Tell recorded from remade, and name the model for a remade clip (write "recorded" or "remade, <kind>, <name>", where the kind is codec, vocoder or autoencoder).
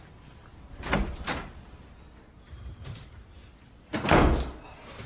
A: recorded